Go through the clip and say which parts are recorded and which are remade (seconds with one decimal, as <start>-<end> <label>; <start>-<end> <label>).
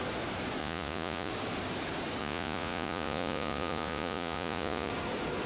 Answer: 0.0-0.6 recorded; 0.6-1.3 remade; 1.3-2.2 recorded; 2.2-4.9 remade; 4.9-5.5 recorded